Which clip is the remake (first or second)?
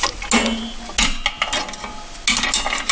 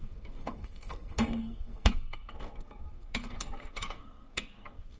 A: second